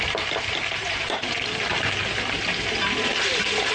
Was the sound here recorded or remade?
remade